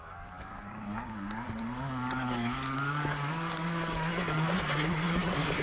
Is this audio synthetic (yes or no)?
yes